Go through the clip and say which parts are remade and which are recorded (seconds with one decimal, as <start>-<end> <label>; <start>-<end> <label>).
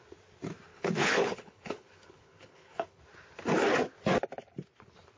0.0-0.7 recorded; 0.7-3.0 remade; 3.0-5.2 recorded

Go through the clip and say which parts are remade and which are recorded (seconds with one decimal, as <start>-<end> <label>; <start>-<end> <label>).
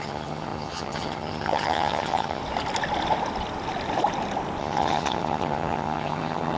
0.0-2.4 remade; 2.4-4.6 recorded; 4.6-6.6 remade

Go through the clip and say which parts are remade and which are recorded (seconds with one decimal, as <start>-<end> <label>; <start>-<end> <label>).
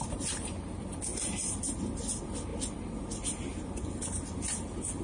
0.0-5.0 recorded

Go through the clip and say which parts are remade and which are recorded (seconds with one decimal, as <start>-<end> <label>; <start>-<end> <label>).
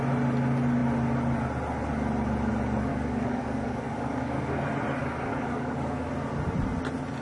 0.0-2.9 recorded; 2.9-4.6 remade; 4.6-5.0 recorded; 5.0-6.1 remade; 6.1-7.2 recorded